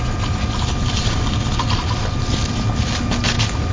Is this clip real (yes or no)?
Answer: yes